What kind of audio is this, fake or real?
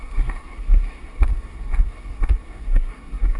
fake